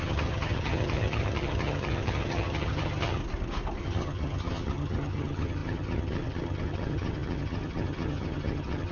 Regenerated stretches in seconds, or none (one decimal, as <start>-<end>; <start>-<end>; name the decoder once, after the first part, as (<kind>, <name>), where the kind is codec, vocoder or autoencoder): 0.0-3.2 (vocoder, HiFi-GAN); 3.8-8.9